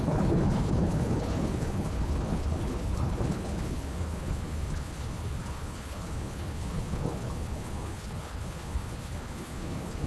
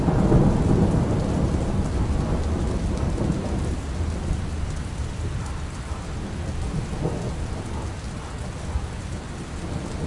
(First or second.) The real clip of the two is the second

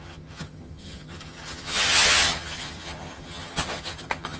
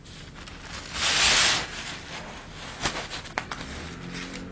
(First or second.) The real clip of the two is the second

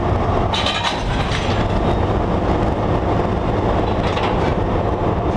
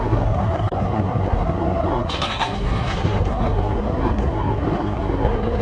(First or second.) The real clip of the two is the first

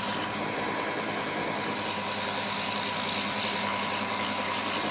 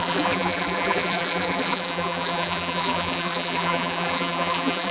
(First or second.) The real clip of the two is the first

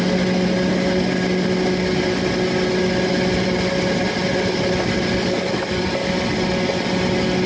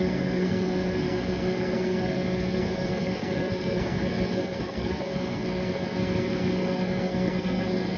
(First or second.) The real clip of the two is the first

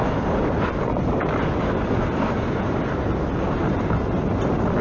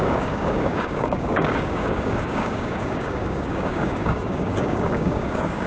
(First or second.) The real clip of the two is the first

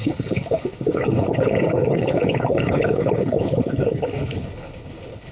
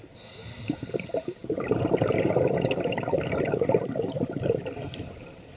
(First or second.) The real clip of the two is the second